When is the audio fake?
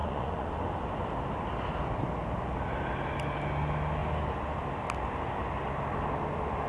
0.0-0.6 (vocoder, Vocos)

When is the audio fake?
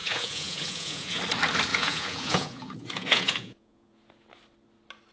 0.0-1.2 (vocoder, Vocos); 1.7-4.0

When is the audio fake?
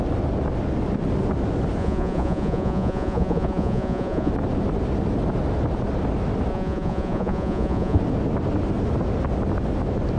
1.8-4.3 (vocoder, Vocos); 6.5-8.0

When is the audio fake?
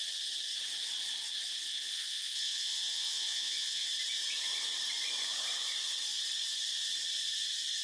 1.7-3.9 (vocoder, Vocos)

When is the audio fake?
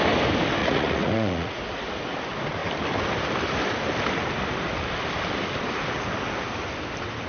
0.6-1.6 (vocoder, Vocos)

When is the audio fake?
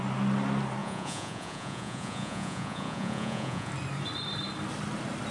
0.8-3.7 (vocoder, Vocos)